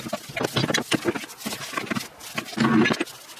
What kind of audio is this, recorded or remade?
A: recorded